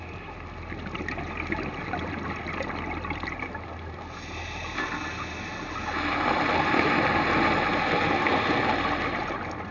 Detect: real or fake real